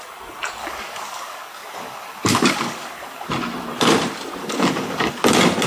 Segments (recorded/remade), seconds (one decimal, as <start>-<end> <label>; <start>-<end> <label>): 0.0-0.6 recorded; 0.6-3.3 remade; 3.3-4.4 recorded; 4.4-5.1 remade; 5.1-5.7 recorded